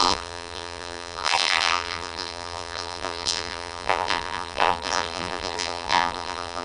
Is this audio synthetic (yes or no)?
yes